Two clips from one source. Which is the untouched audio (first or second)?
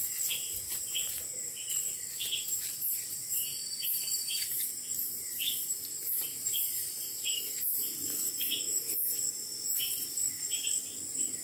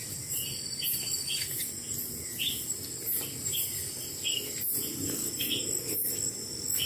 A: second